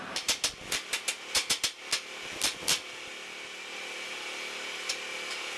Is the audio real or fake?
real